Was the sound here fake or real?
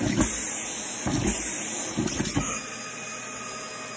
real